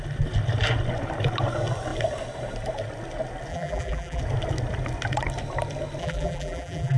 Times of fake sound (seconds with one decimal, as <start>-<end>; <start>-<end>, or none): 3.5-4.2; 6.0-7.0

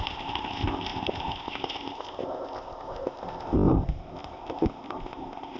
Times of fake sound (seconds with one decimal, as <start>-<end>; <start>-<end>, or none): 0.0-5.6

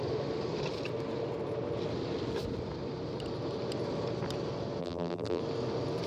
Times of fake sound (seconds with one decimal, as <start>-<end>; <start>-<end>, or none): 4.8-5.4

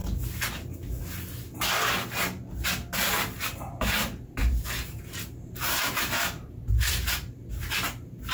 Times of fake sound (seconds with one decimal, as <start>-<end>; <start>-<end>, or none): 4.4-6.6